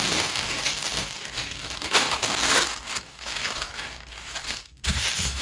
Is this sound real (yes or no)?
no